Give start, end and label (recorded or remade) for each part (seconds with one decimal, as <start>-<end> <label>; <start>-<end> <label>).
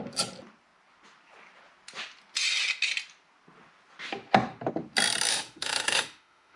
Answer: 0.0-5.3 recorded; 5.3-6.6 remade